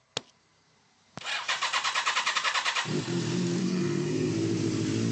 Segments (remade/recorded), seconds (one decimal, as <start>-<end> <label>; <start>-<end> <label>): 0.0-3.6 recorded; 3.6-4.3 remade; 4.3-5.1 recorded